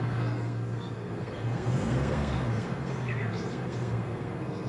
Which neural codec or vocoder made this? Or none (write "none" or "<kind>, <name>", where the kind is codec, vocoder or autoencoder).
codec, SNAC